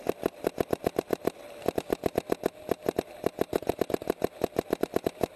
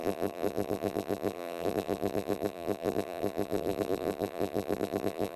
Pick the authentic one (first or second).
first